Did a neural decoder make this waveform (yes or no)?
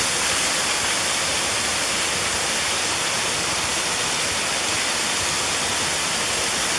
no